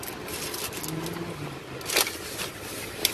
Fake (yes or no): no